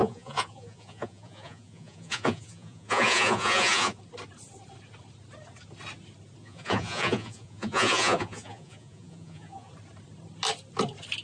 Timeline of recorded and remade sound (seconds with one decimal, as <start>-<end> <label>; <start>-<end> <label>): 0.0-4.0 remade; 4.0-6.4 recorded; 6.4-9.7 remade; 9.7-11.2 recorded